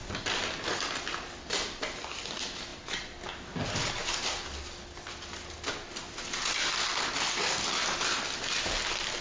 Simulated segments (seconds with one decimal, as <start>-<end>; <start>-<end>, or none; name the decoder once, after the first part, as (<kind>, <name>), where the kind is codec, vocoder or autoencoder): none